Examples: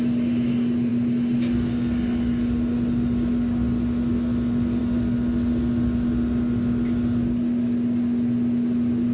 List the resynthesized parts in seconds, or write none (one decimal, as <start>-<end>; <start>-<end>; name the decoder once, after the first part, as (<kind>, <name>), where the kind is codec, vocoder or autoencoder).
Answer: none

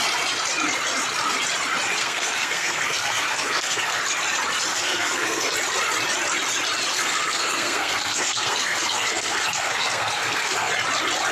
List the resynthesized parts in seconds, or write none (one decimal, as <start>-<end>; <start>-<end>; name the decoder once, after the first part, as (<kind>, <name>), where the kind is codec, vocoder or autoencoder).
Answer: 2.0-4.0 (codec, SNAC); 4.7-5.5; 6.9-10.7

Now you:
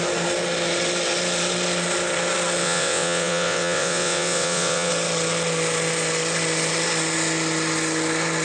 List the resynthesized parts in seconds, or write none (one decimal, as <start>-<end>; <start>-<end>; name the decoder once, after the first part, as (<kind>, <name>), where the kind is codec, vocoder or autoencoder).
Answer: 2.6-4.9 (vocoder, WaveNeXt)